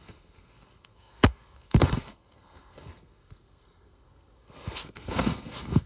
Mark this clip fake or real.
fake